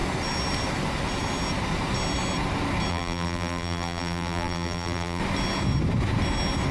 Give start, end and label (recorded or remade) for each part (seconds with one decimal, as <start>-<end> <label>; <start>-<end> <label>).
0.0-2.9 recorded; 2.9-5.2 remade; 5.2-6.7 recorded